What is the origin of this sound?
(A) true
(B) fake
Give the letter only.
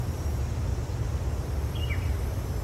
A